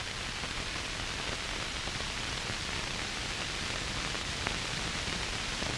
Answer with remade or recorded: remade